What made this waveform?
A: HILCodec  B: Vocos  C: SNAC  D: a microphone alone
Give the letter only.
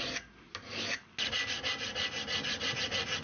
D